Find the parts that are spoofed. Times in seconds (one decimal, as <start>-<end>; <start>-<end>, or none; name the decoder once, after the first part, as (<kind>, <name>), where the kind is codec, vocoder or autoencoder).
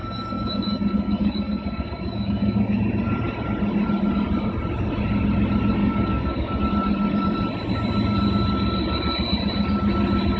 0.0-2.8 (codec, DAC); 5.8-6.6